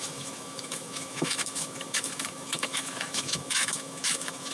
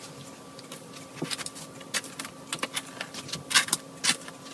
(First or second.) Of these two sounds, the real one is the second